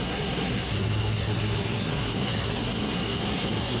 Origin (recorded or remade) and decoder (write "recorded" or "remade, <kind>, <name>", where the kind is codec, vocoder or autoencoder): remade, codec, SNAC